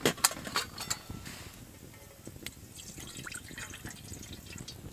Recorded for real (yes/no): yes